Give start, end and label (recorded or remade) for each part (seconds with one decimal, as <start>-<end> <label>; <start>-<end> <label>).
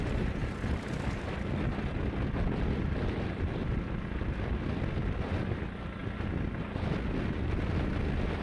0.0-8.4 recorded